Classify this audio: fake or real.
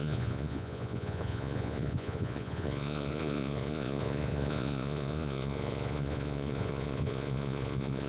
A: fake